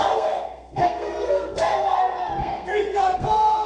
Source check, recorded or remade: remade